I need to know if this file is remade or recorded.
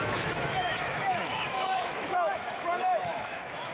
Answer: remade